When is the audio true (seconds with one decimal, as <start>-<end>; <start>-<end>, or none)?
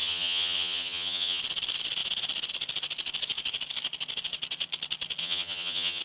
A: 1.4-5.2